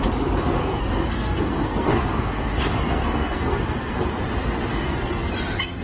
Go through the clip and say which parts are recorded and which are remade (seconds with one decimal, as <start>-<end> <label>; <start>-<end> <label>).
0.0-0.6 recorded; 0.6-4.1 remade; 4.1-4.7 recorded; 4.7-5.3 remade; 5.3-5.8 recorded